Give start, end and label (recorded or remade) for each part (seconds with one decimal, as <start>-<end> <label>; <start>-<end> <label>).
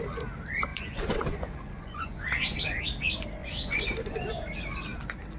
0.0-0.7 recorded; 0.7-2.8 remade; 2.8-3.4 recorded; 3.4-4.2 remade; 4.2-5.4 recorded